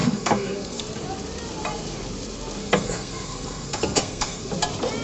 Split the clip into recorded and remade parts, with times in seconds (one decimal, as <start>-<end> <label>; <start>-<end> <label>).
0.0-0.8 remade; 0.8-2.6 recorded; 2.6-4.5 remade; 4.5-5.0 recorded